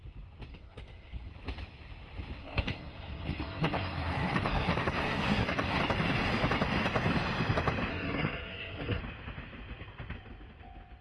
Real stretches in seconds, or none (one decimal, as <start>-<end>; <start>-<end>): 0.0-0.5; 1.3-2.4; 5.8-7.9; 9.0-11.0